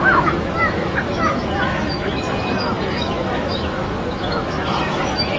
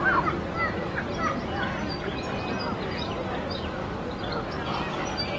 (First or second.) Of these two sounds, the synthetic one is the first